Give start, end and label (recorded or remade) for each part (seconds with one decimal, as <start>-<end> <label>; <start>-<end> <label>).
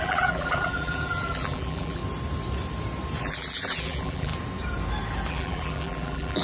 0.0-2.0 remade; 2.0-3.2 recorded; 3.2-4.3 remade; 4.3-5.3 recorded; 5.3-6.4 remade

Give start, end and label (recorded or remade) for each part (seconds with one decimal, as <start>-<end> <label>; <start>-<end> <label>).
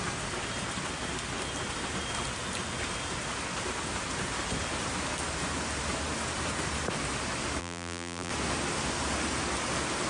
0.0-7.6 recorded; 7.6-8.3 remade; 8.3-10.1 recorded